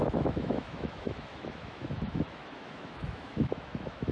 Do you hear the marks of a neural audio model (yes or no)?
yes